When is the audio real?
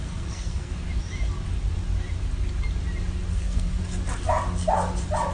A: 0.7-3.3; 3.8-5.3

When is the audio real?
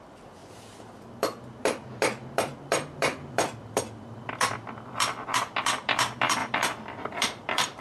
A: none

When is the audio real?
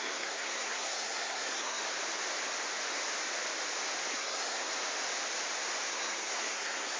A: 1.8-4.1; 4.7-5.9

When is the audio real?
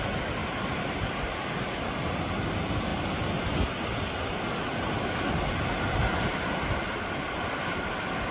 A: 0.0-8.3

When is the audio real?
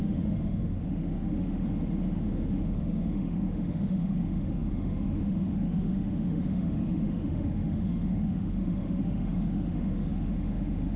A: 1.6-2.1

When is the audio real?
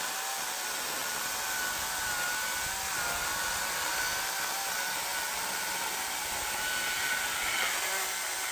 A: 0.0-8.5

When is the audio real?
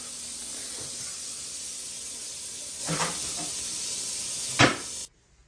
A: 0.0-2.8; 4.6-5.5